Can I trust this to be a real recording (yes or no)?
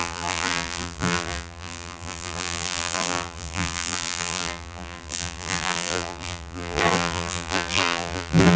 no